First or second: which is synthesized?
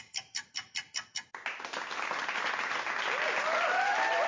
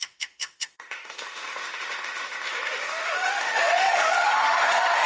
second